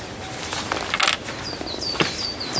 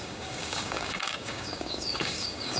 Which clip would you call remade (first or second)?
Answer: second